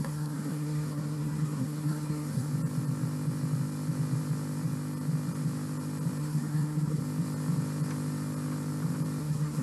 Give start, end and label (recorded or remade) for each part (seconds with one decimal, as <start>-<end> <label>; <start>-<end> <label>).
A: 0.0-2.5 remade; 2.5-6.2 recorded; 6.2-7.0 remade; 7.0-9.2 recorded; 9.2-9.6 remade